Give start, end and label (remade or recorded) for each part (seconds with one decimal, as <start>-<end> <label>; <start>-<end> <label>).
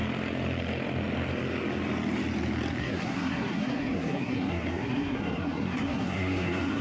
0.0-2.8 recorded; 2.8-6.8 remade